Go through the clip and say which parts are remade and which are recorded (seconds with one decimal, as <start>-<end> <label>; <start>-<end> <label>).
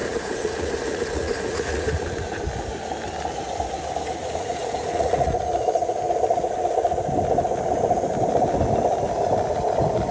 0.0-2.4 remade; 2.4-4.2 recorded; 4.2-5.4 remade; 5.4-10.1 recorded